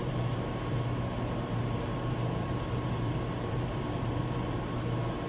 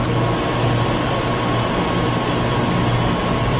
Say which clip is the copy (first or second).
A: first